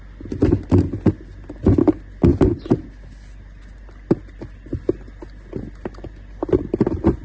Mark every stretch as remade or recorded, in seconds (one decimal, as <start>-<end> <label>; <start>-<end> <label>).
0.0-7.2 recorded